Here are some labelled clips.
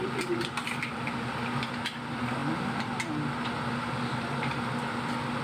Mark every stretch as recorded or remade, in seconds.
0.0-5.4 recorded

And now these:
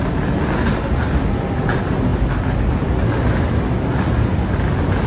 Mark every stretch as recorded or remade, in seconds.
0.0-5.1 recorded

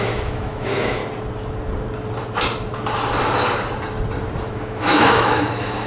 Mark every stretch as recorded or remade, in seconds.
0.0-1.0 remade; 1.0-4.5 recorded; 4.5-5.9 remade

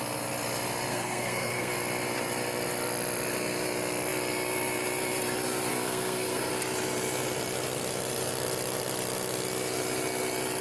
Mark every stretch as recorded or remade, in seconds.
0.0-0.9 recorded; 0.9-1.7 remade; 1.7-5.7 recorded; 5.7-6.5 remade; 6.5-10.6 recorded

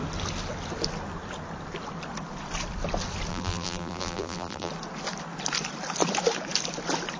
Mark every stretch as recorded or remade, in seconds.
0.0-3.3 recorded; 3.3-4.7 remade; 4.7-7.2 recorded

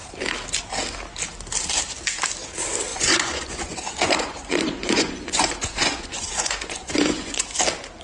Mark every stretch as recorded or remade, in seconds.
0.0-2.9 recorded; 2.9-7.4 remade; 7.4-8.0 recorded